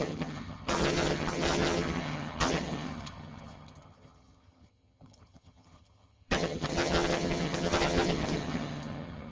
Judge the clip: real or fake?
fake